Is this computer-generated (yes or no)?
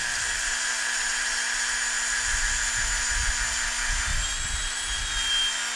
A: no